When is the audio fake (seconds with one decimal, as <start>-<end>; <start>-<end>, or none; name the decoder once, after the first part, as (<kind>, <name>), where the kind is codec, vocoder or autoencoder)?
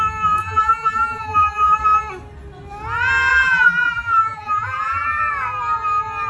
0.4-1.8 (vocoder, BigVGAN v2); 3.3-5.2